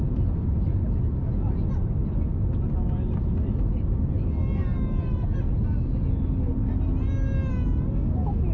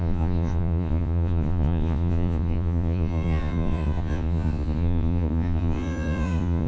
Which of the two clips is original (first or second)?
first